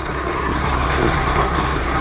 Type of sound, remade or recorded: remade